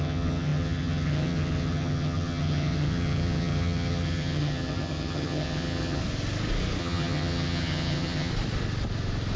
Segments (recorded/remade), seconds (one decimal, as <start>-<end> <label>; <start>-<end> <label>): 0.0-6.0 remade; 6.0-6.8 recorded; 6.8-8.3 remade; 8.3-9.4 recorded